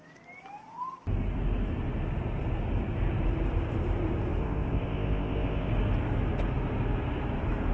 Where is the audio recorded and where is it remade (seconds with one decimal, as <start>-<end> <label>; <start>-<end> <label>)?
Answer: 0.0-4.4 recorded; 4.4-5.7 remade; 5.7-7.7 recorded